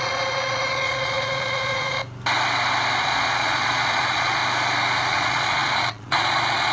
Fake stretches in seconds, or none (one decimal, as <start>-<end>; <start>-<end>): 0.0-2.0; 3.0-4.4; 5.1-6.7